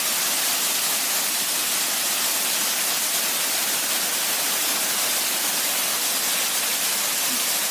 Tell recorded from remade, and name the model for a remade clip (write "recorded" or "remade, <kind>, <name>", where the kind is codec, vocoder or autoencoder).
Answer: recorded